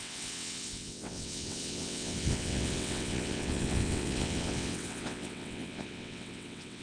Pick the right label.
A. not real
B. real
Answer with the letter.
A